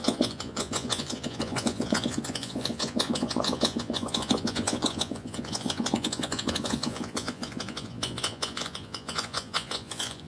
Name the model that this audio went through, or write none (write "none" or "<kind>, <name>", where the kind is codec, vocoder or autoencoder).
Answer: vocoder, Vocos